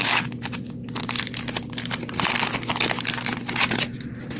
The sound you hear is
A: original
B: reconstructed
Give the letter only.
A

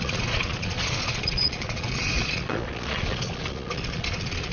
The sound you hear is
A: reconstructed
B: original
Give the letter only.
A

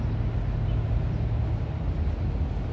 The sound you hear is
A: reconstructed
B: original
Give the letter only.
B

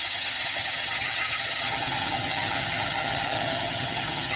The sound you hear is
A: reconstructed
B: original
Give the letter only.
A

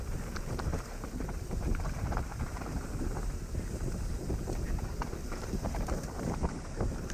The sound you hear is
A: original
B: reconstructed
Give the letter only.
B